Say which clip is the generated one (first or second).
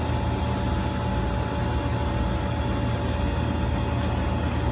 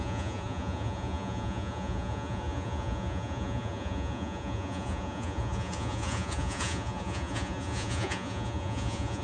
second